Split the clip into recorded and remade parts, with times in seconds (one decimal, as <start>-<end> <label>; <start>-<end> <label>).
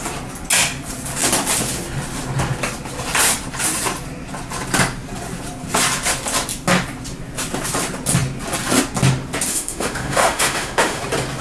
0.0-9.5 recorded; 9.5-11.0 remade; 11.0-11.4 recorded